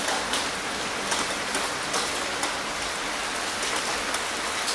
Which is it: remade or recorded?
recorded